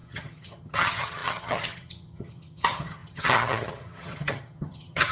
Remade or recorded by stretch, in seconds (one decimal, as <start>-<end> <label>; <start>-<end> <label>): 0.0-5.1 remade